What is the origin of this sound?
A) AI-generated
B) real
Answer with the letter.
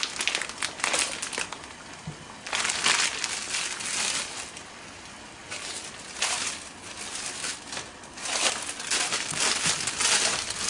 B